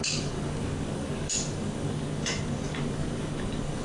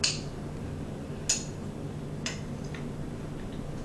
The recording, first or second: second